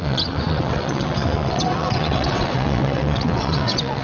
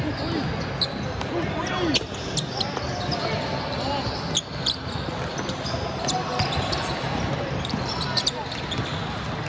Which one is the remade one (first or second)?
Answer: first